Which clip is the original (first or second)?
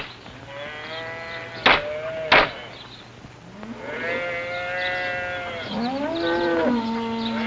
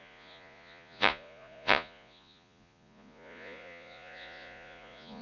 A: first